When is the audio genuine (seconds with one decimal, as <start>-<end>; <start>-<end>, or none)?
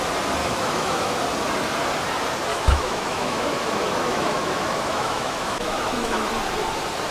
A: 0.0-0.4; 1.2-2.5; 6.3-7.1